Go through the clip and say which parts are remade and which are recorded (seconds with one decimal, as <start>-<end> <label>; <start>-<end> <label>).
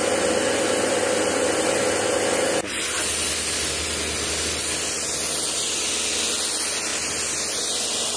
0.0-8.2 recorded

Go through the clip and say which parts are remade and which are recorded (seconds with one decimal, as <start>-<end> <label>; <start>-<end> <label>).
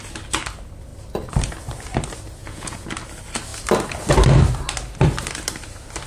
0.0-2.4 recorded; 2.4-2.9 remade; 2.9-6.1 recorded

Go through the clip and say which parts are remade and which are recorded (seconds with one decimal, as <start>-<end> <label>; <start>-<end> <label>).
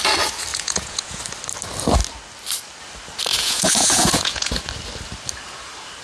0.0-0.5 recorded; 0.5-1.2 remade; 1.2-3.3 recorded; 3.3-4.5 remade; 4.5-6.0 recorded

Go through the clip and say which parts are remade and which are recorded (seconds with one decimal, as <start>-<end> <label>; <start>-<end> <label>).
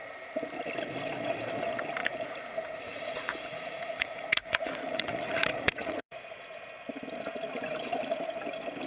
0.0-2.0 recorded; 2.0-6.4 remade; 6.4-8.9 recorded